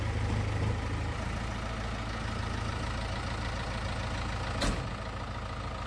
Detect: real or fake real